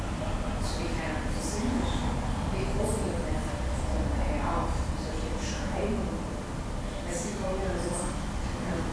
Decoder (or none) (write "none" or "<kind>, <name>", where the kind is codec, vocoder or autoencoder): none